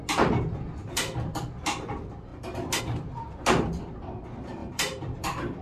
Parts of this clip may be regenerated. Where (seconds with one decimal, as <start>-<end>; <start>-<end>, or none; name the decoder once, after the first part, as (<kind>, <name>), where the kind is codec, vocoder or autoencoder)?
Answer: 0.8-1.9 (vocoder, BigVGAN v2); 4.6-5.6

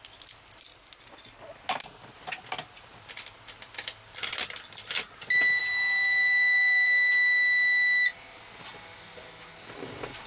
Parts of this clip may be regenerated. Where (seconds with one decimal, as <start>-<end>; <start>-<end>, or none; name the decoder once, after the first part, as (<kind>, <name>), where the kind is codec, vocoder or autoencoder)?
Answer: 5.6-7.1 (vocoder, BigVGAN v2)

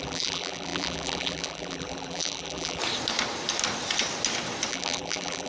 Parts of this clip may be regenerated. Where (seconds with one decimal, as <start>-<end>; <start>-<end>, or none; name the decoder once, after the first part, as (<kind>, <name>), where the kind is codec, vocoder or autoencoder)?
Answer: 0.0-2.8 (vocoder, BigVGAN v2); 4.7-5.5

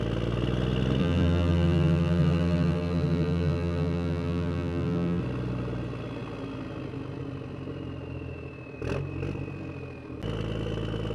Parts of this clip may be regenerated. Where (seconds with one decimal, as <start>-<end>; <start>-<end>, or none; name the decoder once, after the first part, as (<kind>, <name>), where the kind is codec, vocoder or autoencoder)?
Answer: 1.0-5.2 (vocoder, BigVGAN v2)

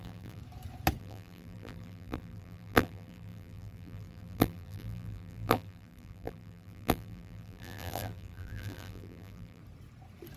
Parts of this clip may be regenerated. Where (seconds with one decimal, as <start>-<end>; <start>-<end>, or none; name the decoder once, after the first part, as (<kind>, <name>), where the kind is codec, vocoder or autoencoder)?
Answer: 0.0-0.4 (vocoder, BigVGAN v2); 1.0-9.6